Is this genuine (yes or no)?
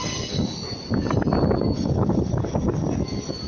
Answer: yes